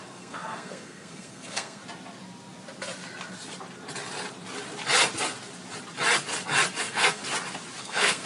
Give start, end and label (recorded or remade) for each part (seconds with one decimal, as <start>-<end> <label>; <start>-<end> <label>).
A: 0.0-1.8 remade; 1.8-6.8 recorded; 6.8-7.2 remade; 7.2-7.8 recorded; 7.8-8.3 remade